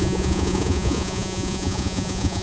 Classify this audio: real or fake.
fake